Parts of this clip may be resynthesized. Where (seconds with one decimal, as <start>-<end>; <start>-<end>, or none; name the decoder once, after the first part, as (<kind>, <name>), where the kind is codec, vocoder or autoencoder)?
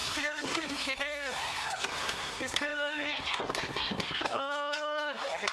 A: 0.0-5.5 (codec, SNAC)